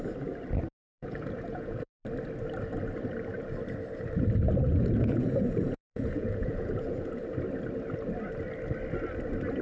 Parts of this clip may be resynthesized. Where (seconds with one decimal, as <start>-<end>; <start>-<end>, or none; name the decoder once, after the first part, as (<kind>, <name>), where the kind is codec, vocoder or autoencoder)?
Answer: 0.9-1.9 (vocoder, Vocos); 4.8-7.2